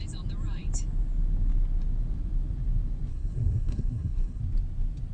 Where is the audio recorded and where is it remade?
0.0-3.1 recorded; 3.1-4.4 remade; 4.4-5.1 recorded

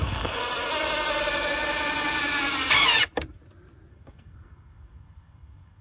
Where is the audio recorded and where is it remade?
0.0-0.4 remade; 0.4-3.9 recorded; 3.9-5.8 remade